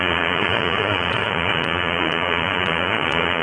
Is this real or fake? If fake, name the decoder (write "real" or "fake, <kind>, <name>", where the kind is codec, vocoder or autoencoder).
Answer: fake, vocoder, Vocos